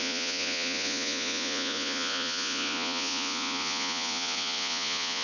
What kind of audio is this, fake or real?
fake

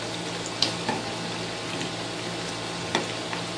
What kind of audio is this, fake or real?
real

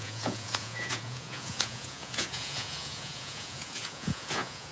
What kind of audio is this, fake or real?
fake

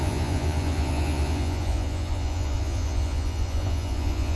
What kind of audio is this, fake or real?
fake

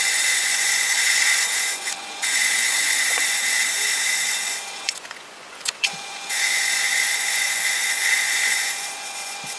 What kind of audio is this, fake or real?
fake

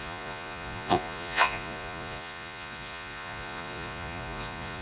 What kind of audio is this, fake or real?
fake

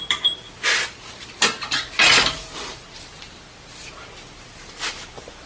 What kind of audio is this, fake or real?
real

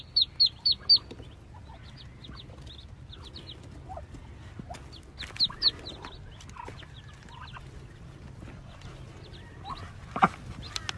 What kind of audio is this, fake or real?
real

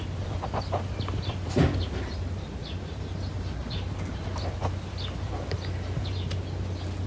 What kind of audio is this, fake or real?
real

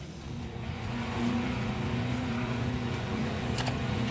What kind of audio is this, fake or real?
fake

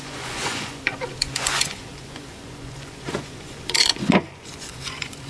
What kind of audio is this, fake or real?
fake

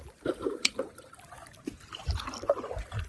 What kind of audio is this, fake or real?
real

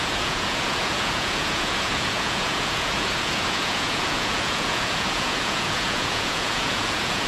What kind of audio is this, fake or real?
fake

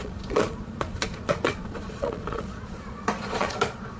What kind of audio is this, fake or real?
fake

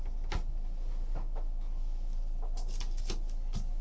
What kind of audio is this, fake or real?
real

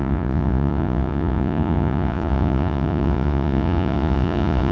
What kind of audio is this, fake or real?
fake